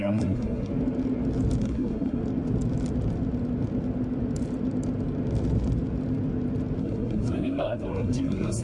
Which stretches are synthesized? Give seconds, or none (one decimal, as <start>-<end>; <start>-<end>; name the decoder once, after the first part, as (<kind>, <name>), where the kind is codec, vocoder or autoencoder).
0.0-0.7 (codec, SNAC); 1.6-2.2; 6.8-8.6